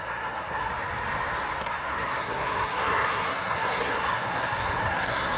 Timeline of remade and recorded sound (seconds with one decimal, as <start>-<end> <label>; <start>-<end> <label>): 0.0-0.7 remade; 0.7-1.6 recorded; 1.6-5.4 remade